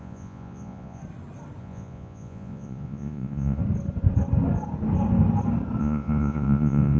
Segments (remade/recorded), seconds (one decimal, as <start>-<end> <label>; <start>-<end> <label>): 0.0-1.0 remade; 1.0-1.6 recorded; 1.6-3.6 remade; 3.6-5.8 recorded; 5.8-7.0 remade

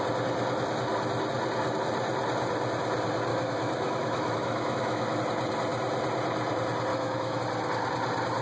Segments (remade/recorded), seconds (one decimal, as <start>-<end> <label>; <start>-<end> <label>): 0.0-3.3 recorded; 3.3-5.2 remade; 5.2-6.9 recorded; 6.9-7.4 remade; 7.4-8.4 recorded

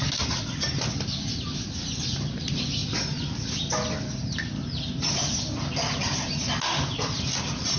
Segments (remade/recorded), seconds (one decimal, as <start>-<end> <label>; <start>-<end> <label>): 0.0-7.8 recorded